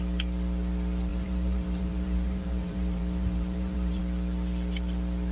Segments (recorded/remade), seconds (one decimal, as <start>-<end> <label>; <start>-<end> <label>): 0.0-1.1 recorded; 1.1-4.0 remade; 4.0-5.3 recorded